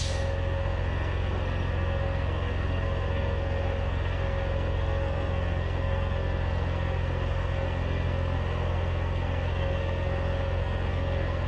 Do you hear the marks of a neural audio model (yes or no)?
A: yes